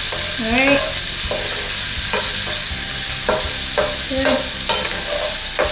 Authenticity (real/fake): real